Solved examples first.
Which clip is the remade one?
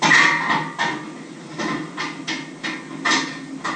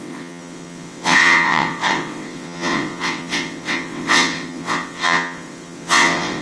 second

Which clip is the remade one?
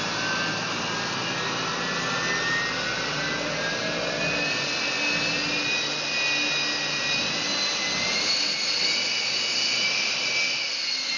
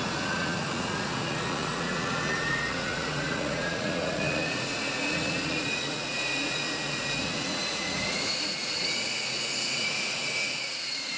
second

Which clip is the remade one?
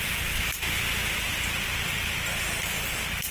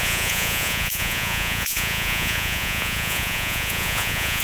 second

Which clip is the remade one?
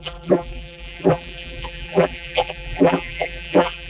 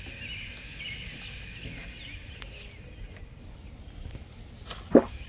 first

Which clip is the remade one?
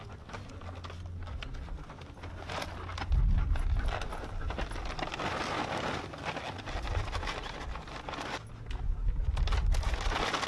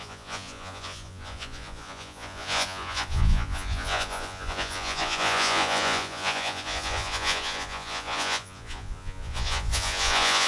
second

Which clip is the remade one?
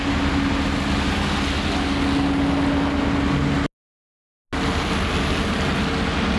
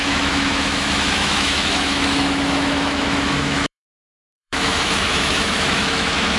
second